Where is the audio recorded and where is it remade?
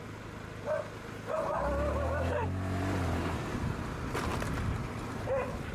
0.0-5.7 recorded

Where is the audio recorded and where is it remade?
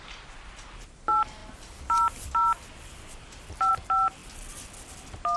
0.0-5.4 recorded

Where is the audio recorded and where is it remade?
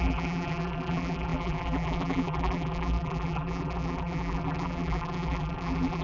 0.0-6.0 remade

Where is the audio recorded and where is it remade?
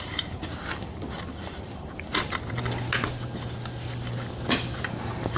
0.0-2.1 remade; 2.1-4.8 recorded; 4.8-5.4 remade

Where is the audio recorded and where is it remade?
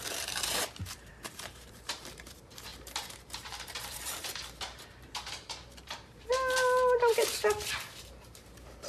0.0-6.3 remade; 6.3-7.1 recorded; 7.1-8.9 remade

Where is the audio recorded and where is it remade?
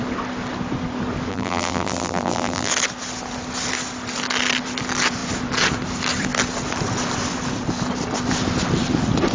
0.0-1.3 recorded; 1.3-2.7 remade; 2.7-9.3 recorded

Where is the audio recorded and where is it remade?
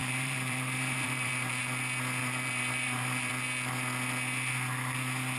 0.0-1.6 remade; 1.6-2.2 recorded; 2.2-3.3 remade; 3.3-5.4 recorded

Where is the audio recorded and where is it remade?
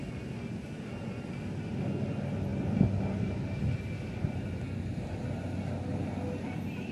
0.0-6.9 recorded